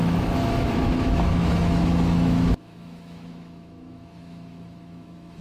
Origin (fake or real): fake